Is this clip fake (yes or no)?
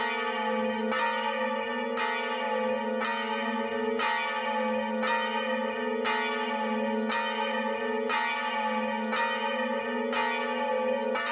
no